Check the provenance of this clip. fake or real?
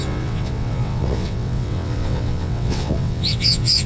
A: fake